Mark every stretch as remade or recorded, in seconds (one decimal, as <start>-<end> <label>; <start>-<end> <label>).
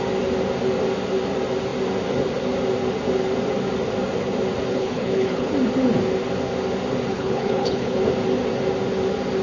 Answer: 0.0-4.7 recorded; 4.7-5.5 remade; 5.5-7.1 recorded; 7.1-8.0 remade; 8.0-9.4 recorded